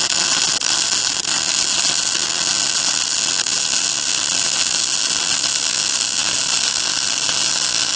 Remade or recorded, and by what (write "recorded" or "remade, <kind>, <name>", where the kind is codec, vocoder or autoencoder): recorded